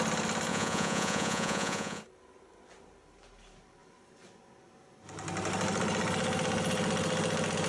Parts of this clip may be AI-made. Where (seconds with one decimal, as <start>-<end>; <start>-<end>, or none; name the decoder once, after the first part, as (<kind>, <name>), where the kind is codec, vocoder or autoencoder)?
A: 0.5-2.0 (vocoder, Vocos)